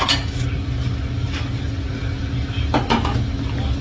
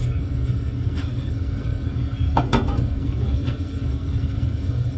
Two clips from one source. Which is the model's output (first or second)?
second